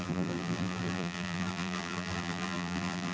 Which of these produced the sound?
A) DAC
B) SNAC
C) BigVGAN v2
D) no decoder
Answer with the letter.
C